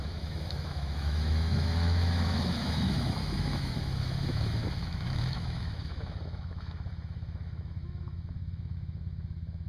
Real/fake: fake